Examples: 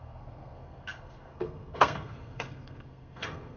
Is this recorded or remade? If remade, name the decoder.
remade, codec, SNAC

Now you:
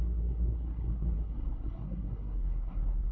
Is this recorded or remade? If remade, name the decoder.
remade, codec, SNAC